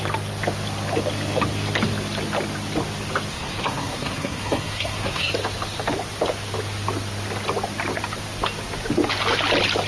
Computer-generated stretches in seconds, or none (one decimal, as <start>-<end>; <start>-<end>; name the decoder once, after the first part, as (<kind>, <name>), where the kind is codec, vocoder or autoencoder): 3.3-5.3 (codec, SNAC)